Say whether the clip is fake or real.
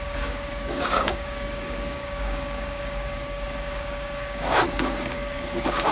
fake